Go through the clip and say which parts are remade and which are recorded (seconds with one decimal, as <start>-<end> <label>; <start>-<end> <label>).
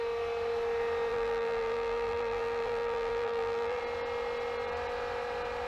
0.0-1.1 recorded; 1.1-3.8 remade; 3.8-5.7 recorded